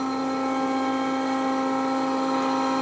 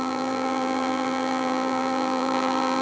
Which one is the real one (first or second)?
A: first